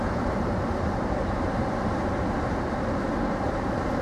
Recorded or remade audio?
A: remade